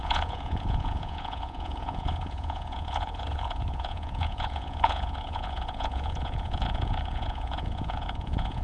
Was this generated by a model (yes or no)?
yes